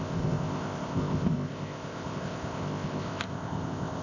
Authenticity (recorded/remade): remade